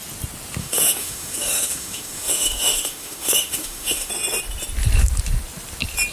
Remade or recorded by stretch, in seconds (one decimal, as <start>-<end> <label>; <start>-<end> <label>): 0.0-0.6 recorded; 0.6-4.1 remade; 4.1-6.1 recorded